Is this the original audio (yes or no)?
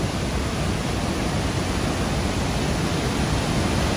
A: yes